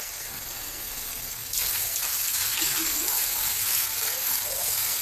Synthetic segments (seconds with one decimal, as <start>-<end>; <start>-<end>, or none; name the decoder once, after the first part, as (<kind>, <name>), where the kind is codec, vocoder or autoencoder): 0.0-5.0 (codec, SNAC)

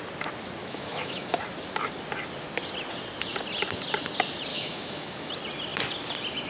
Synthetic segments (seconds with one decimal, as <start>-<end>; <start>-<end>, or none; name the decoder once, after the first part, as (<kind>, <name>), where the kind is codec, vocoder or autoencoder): 0.6-1.4 (autoencoder, DAC-VAE); 4.5-5.3

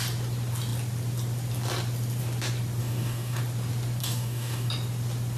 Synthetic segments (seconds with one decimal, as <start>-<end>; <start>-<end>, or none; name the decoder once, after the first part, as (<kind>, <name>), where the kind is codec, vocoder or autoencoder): 2.8-3.4 (codec, DAC); 4.0-4.7